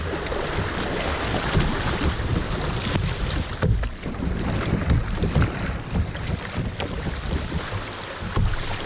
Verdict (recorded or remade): recorded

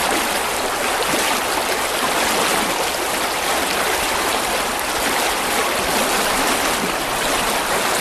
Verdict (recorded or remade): recorded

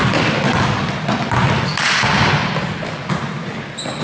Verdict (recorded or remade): recorded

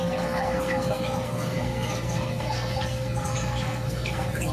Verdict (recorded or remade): remade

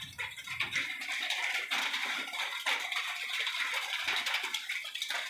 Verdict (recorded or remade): recorded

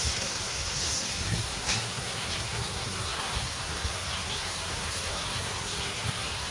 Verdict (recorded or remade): remade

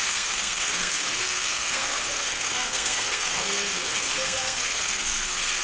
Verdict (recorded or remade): remade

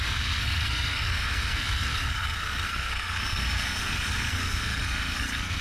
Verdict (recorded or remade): remade